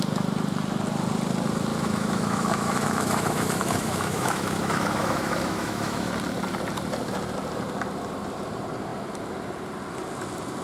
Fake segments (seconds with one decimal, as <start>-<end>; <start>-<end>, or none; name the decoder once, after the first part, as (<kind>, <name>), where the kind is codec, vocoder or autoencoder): 1.7-6.1 (autoencoder, DAC-VAE)